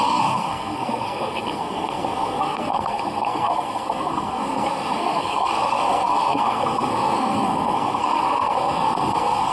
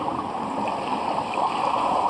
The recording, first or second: second